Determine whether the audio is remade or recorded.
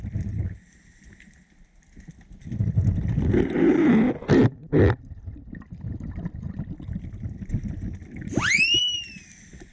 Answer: recorded